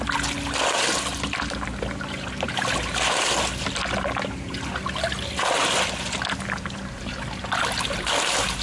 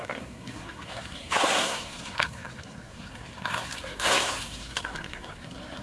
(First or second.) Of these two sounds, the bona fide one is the first